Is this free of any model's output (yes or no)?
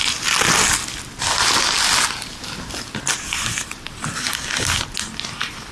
yes